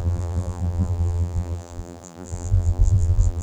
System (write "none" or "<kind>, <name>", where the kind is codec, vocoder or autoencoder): vocoder, BigVGAN v2